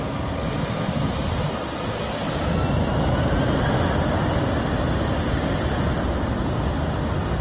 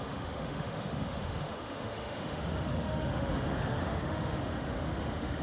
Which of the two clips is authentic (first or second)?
first